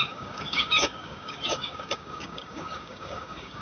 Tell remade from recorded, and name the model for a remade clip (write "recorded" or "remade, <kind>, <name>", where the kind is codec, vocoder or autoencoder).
remade, codec, DAC